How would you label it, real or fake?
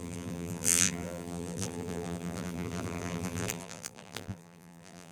fake